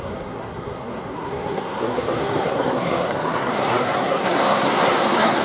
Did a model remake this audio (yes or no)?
yes